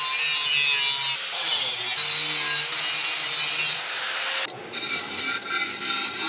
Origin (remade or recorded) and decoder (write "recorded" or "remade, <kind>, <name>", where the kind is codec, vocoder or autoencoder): recorded